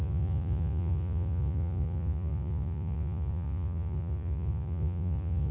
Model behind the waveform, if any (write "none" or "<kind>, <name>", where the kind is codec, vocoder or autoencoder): vocoder, Vocos